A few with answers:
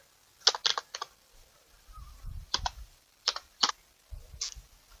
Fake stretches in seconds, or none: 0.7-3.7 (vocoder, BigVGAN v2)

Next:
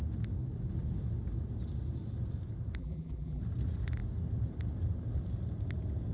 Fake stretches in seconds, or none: 2.8-3.4 (vocoder, BigVGAN v2)